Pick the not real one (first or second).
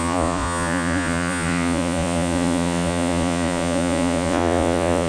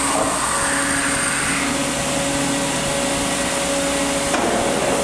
first